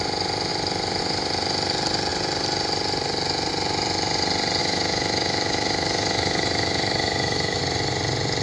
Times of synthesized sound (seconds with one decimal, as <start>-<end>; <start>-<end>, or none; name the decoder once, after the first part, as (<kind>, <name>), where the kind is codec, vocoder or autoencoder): 4.6-7.6 (autoencoder, DAC-VAE)